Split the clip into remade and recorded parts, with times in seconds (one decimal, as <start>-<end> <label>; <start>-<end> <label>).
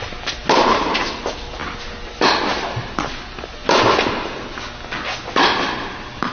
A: 0.0-6.3 recorded